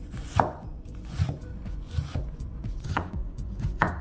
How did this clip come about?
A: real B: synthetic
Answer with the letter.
B